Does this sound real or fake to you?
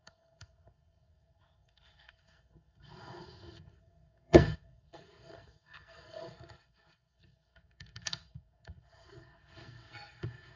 fake